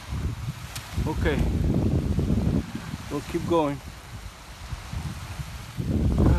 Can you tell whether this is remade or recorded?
recorded